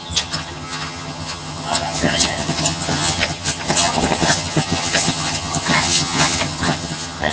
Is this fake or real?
fake